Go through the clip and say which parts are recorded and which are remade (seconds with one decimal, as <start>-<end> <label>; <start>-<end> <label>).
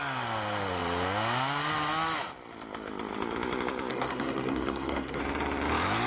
0.0-3.9 recorded; 3.9-5.2 remade; 5.2-6.1 recorded